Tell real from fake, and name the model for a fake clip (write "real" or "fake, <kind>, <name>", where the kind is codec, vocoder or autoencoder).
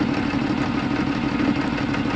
real